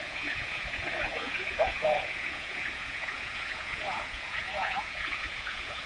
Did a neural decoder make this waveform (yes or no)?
yes